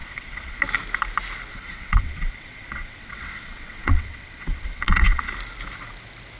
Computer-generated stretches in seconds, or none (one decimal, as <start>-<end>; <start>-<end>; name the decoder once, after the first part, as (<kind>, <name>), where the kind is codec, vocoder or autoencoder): 0.0-0.6 (vocoder, WaveNeXt); 1.5-5.3